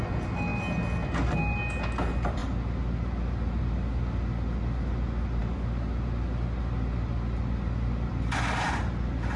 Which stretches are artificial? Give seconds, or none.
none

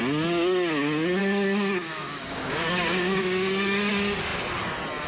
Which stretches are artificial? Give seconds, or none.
1.2-3.9 (codec, DAC)

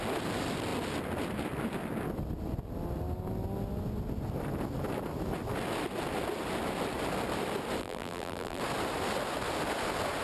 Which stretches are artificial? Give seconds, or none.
7.8-8.6 (vocoder, BigVGAN v2)

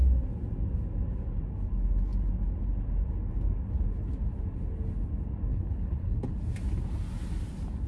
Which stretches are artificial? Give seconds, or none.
5.5-6.3 (codec, HILCodec)

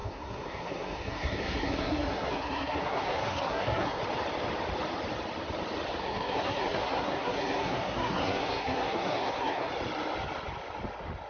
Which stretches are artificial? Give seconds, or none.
0.0-4.0 (codec, SNAC); 6.0-9.7

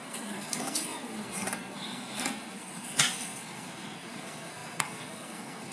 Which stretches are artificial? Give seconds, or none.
0.0-5.7 (codec, SNAC)